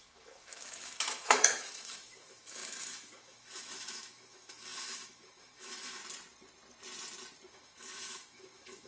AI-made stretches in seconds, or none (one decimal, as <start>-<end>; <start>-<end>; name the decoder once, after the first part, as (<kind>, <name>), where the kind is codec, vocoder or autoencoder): 0.0-6.0 (autoencoder, DAC-VAE); 7.5-8.9